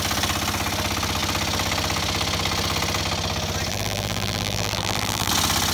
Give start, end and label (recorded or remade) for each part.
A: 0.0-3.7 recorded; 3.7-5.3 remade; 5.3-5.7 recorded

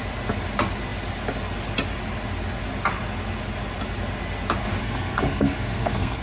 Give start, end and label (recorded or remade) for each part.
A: 0.0-4.8 recorded; 4.8-6.2 remade

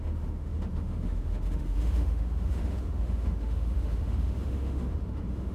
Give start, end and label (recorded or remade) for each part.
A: 0.0-5.5 remade

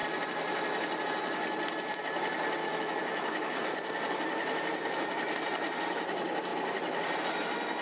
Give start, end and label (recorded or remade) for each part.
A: 0.0-2.6 recorded; 2.6-3.6 remade; 3.6-7.8 recorded

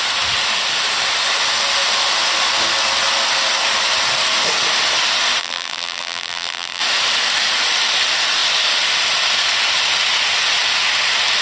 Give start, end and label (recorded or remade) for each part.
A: 0.0-5.4 recorded; 5.4-6.8 remade; 6.8-11.4 recorded

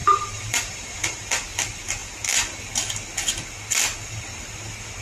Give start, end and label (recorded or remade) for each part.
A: 0.0-1.3 remade; 1.3-5.0 recorded